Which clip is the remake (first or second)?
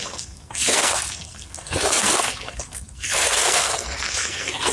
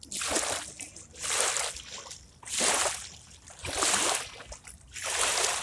first